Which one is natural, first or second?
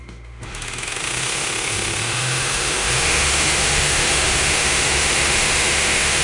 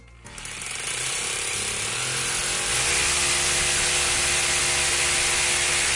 second